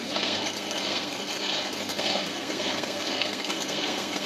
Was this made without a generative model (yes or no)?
no